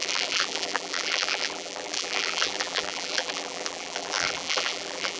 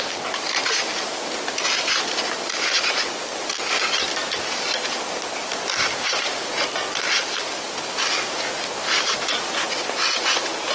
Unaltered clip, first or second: second